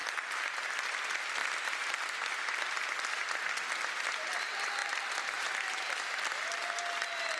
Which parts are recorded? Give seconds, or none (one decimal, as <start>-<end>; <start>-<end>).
0.5-1.4; 3.9-4.8; 6.8-7.4